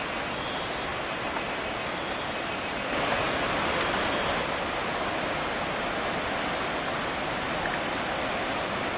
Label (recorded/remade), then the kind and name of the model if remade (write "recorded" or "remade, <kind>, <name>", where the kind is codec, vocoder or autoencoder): recorded